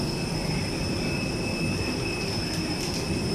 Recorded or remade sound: recorded